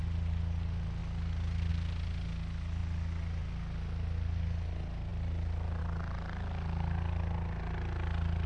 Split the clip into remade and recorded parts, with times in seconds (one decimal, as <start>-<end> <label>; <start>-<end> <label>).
0.0-8.5 recorded